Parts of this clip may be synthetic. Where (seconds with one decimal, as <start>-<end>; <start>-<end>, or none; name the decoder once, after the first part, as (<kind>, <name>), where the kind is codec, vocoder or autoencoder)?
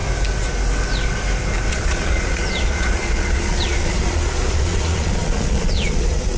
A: 1.7-6.4 (vocoder, Vocos)